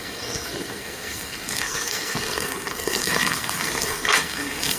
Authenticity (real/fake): fake